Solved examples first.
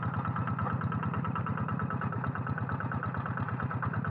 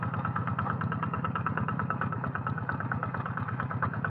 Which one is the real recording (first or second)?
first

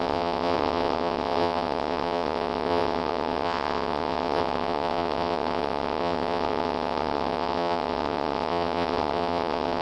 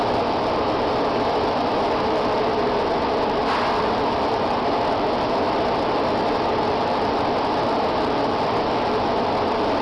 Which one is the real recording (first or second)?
second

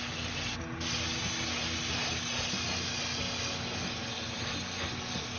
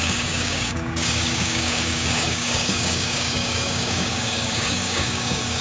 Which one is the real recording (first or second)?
first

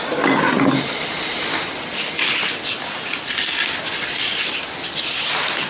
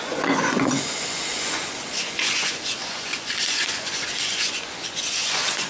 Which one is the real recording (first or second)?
first